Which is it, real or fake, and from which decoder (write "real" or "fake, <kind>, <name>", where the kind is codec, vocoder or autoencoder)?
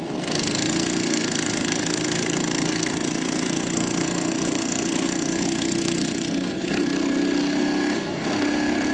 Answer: fake, codec, SNAC